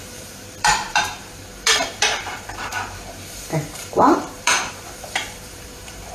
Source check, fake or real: fake